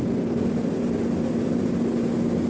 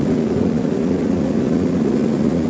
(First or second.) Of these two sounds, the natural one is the first